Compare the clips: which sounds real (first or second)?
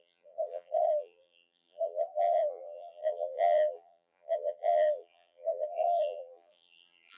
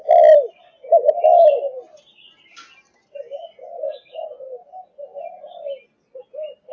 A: second